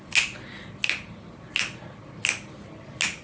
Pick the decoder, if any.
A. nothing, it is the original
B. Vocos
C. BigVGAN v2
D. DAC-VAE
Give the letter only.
A